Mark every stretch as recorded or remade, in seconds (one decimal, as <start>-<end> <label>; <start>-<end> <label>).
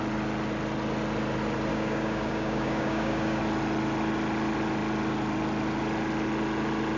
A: 0.0-1.7 recorded; 1.7-3.4 remade; 3.4-7.0 recorded